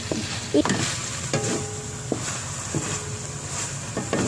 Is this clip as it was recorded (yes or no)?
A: yes